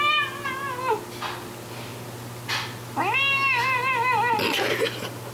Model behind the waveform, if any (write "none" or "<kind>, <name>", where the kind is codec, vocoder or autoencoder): none